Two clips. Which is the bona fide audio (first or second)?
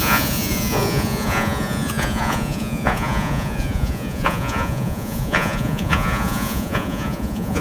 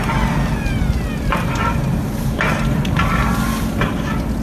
second